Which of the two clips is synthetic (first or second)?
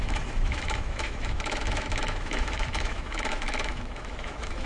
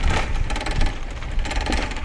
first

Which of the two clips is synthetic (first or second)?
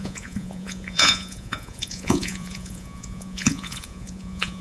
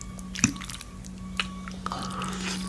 first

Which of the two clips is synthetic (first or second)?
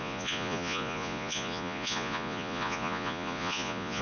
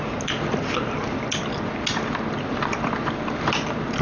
first